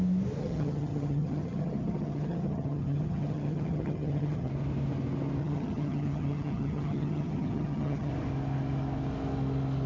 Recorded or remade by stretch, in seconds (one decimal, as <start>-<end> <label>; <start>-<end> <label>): 0.0-0.4 recorded; 0.4-4.5 remade; 4.5-5.4 recorded; 5.4-8.1 remade; 8.1-9.9 recorded